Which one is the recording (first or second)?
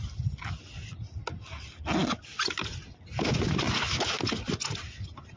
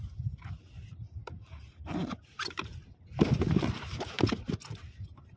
first